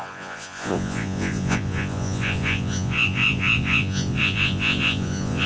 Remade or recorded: remade